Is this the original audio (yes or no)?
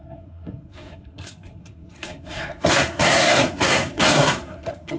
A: no